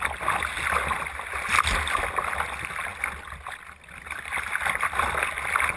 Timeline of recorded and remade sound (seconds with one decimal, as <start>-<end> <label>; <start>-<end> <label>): 0.0-5.8 recorded